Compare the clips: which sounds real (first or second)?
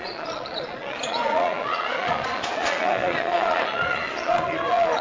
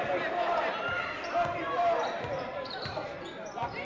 second